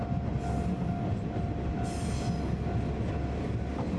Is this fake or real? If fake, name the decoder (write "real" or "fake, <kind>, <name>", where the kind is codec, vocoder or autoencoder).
real